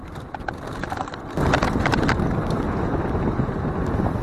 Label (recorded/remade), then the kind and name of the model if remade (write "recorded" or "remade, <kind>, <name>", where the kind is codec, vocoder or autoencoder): recorded